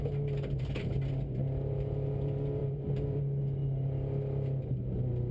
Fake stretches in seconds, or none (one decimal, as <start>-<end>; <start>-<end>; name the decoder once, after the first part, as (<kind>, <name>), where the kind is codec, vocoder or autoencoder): 2.6-3.2 (vocoder, BigVGAN v2)